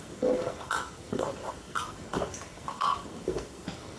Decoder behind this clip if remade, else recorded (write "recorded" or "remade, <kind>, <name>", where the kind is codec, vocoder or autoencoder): remade, codec, SNAC